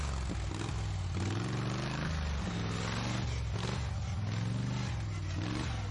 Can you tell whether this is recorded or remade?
recorded